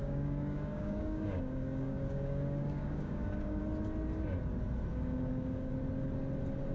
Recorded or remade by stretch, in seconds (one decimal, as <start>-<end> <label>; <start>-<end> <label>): 0.0-3.6 remade; 3.6-4.9 recorded; 4.9-5.7 remade; 5.7-6.7 recorded